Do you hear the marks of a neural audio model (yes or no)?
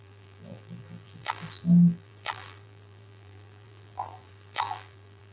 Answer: yes